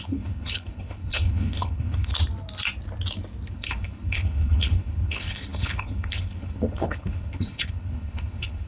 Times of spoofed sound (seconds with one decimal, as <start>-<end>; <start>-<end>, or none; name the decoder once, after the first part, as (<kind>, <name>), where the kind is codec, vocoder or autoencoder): 0.0-2.1 (codec, HILCodec); 3.5-8.7